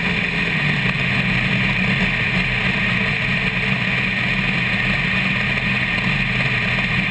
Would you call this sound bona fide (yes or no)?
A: yes